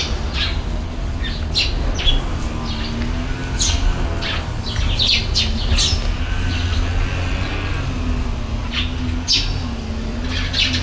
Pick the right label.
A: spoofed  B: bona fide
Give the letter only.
B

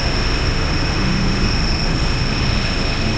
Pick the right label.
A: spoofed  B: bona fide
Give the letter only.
A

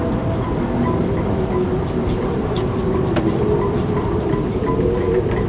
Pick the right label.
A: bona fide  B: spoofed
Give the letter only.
A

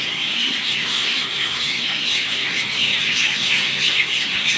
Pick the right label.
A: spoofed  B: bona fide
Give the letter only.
A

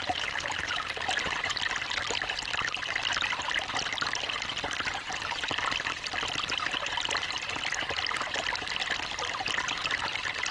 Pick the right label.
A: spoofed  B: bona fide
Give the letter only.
B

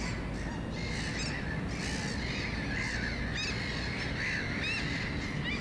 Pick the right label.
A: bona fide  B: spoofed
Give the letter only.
A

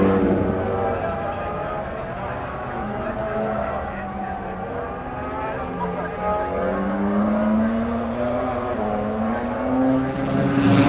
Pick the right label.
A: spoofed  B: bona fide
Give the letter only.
B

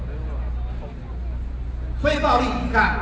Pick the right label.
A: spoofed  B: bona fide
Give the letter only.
B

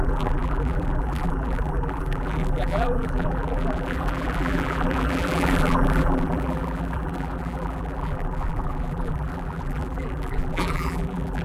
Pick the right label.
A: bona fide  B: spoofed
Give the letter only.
B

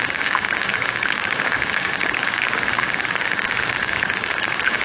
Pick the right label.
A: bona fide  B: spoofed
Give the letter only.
B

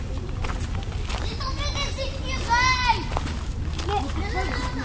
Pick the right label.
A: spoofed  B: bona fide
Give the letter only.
B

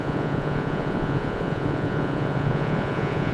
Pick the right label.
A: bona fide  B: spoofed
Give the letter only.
B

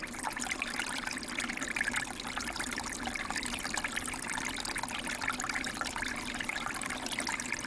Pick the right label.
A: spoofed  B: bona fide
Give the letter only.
B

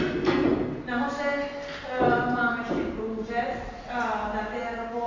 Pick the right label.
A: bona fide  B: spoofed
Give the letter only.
A